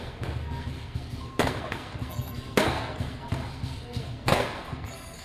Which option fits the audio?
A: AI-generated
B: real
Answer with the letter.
A